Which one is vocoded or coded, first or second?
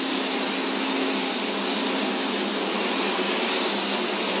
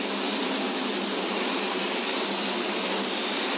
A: second